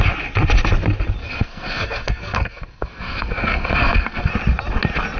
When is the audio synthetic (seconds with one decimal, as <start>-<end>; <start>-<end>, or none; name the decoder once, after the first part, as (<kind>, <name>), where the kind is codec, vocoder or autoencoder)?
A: 1.2-4.3 (codec, SNAC)